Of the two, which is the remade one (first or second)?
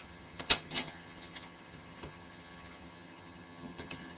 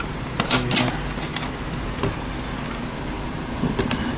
first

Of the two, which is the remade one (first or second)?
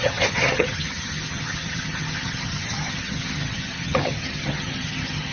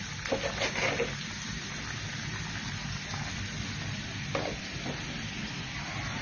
first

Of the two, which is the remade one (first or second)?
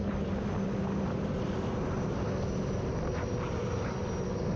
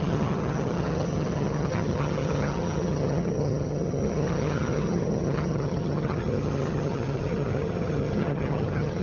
second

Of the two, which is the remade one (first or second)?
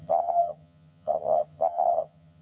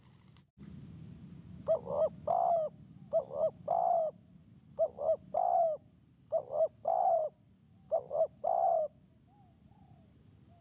first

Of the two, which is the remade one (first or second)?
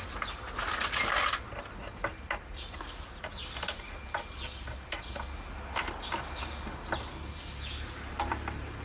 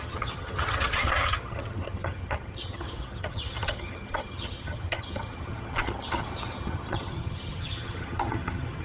second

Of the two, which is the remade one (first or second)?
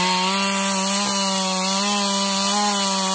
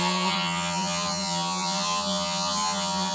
second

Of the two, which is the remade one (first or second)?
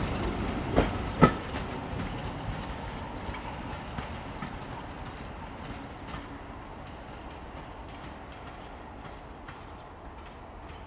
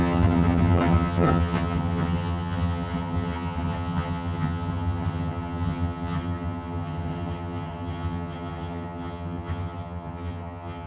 second